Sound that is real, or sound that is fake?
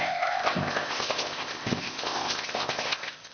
fake